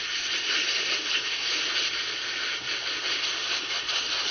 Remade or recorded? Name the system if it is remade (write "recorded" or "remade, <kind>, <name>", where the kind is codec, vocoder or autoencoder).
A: recorded